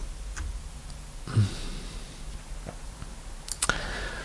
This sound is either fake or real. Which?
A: real